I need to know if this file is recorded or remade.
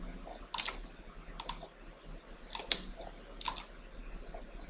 recorded